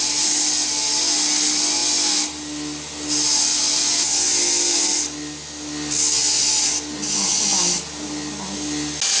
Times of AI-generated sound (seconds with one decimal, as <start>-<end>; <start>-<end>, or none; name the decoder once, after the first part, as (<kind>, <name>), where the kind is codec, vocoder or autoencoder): none